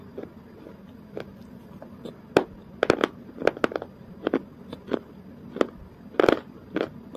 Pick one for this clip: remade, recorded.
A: recorded